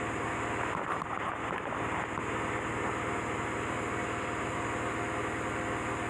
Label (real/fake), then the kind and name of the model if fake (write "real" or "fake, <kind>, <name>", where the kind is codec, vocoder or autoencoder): real